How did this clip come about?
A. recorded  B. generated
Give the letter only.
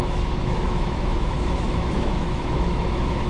B